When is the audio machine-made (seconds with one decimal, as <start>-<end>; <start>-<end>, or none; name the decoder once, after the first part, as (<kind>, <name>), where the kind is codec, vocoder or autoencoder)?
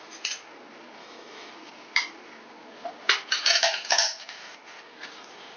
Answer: 1.0-1.5 (autoencoder, DAC-VAE)